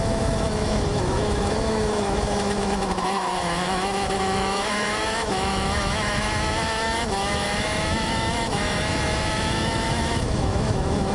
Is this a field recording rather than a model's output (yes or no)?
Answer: no